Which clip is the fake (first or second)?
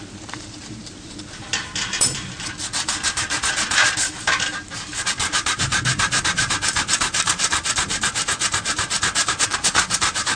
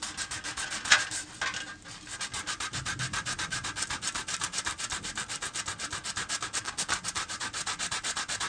first